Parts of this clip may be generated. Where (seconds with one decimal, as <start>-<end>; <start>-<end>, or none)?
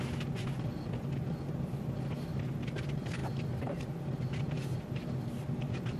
0.0-0.7; 2.5-6.0